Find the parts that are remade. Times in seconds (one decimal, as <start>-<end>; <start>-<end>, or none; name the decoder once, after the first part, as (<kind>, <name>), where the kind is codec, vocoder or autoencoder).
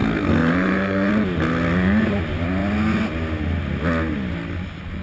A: 0.0-1.1 (codec, SNAC)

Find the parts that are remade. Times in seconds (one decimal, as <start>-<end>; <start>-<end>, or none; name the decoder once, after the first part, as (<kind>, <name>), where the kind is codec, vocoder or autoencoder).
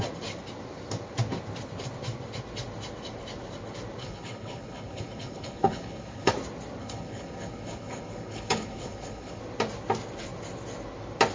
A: 4.0-6.3 (codec, HILCodec); 6.8-9.4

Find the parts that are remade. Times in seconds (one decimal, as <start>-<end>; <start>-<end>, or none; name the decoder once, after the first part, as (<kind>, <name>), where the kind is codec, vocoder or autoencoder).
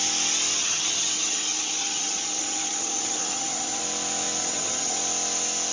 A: 0.6-3.8 (vocoder, HiFi-GAN); 4.4-5.0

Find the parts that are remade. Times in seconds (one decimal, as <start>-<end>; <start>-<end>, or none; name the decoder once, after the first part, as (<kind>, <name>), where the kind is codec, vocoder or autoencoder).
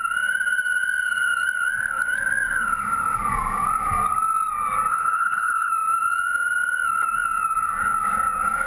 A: 4.9-5.7 (codec, HILCodec)